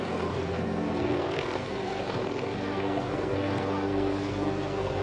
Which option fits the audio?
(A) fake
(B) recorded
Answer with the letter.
A